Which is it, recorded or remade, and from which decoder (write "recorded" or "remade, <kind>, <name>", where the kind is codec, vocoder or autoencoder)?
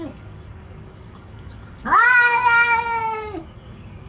remade, codec, DAC